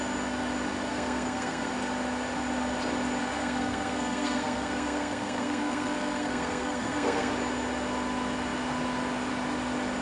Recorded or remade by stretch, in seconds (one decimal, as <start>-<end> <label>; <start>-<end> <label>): 0.0-0.9 recorded; 0.9-1.7 remade; 1.7-3.2 recorded; 3.2-7.3 remade; 7.3-10.0 recorded